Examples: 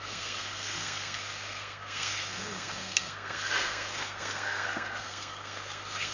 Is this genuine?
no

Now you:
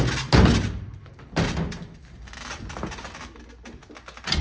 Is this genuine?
yes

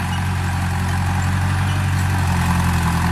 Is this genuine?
yes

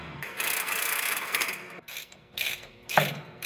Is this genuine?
no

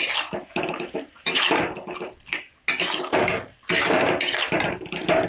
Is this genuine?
yes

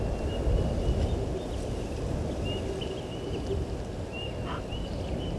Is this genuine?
yes